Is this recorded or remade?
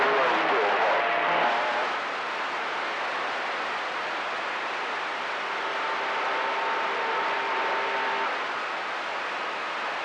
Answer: recorded